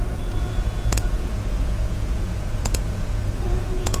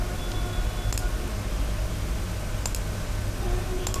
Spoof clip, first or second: first